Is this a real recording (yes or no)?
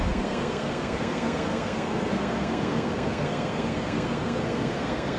no